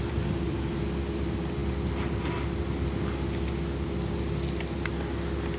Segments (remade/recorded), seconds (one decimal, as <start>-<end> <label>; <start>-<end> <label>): 0.0-5.6 recorded